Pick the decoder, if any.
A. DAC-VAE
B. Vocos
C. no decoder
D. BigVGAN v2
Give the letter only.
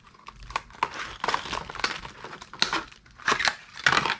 C